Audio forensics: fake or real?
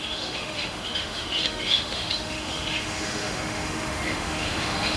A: fake